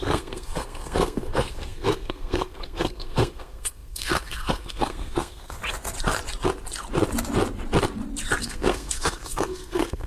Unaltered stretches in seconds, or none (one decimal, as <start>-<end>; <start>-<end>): 5.6-8.4